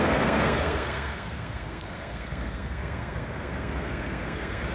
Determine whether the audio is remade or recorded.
remade